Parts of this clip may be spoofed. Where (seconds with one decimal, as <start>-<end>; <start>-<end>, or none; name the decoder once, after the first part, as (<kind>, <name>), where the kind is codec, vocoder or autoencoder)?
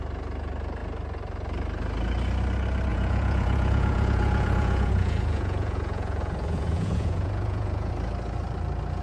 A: 2.9-7.9 (vocoder, Vocos)